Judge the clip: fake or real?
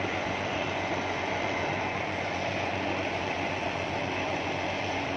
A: fake